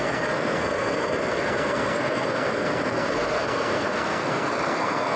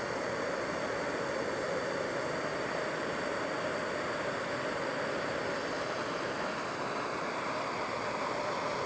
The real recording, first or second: second